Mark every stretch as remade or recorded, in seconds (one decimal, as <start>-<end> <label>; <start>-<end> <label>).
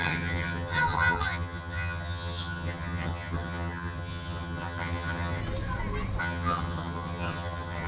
0.0-5.4 remade; 5.4-6.2 recorded; 6.2-7.9 remade